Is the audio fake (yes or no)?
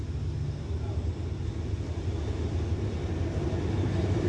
no